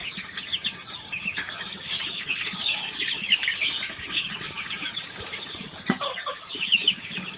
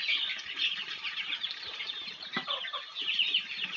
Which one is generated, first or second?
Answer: first